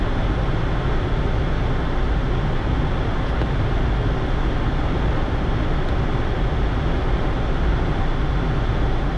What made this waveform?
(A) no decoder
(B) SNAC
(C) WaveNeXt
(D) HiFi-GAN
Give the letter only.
A